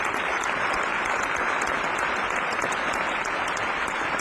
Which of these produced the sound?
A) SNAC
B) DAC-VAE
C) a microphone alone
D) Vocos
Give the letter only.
C